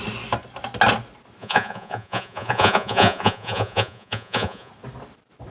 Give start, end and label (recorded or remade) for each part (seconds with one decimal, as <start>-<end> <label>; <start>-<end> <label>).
0.0-1.4 recorded; 1.4-4.7 remade; 4.7-5.5 recorded